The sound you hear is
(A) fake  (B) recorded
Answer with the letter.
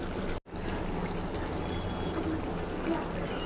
B